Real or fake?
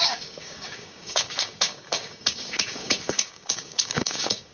fake